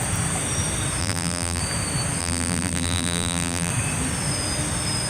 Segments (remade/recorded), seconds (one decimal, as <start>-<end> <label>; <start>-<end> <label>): 0.0-1.0 recorded; 1.0-1.6 remade; 1.6-2.2 recorded; 2.2-3.7 remade; 3.7-5.1 recorded